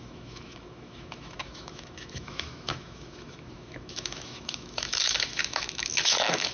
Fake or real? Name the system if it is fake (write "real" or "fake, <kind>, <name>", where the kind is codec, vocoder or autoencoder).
fake, autoencoder, DAC-VAE